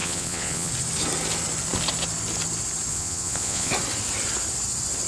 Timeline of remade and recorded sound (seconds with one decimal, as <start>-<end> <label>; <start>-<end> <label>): 0.0-0.7 remade; 0.7-2.9 recorded; 2.9-3.7 remade; 3.7-5.1 recorded